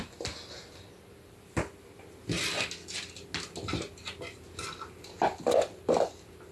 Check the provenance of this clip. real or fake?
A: real